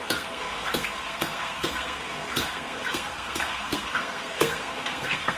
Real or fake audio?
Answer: fake